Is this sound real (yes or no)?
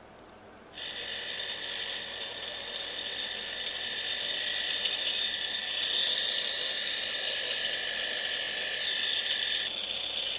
yes